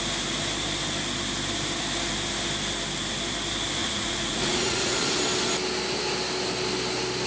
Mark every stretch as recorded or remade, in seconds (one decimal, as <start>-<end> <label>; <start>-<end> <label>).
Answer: 0.0-3.8 recorded; 3.8-5.2 remade; 5.2-7.3 recorded